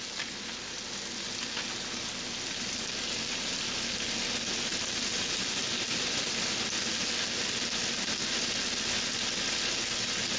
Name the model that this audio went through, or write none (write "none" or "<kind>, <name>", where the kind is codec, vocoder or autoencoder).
none